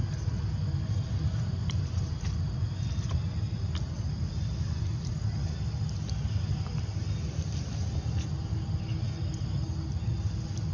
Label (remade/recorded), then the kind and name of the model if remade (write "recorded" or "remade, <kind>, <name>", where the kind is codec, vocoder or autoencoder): recorded